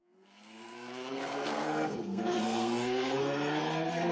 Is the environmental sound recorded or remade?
remade